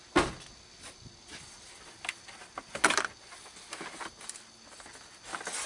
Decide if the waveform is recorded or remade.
recorded